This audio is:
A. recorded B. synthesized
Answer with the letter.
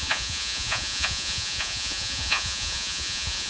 B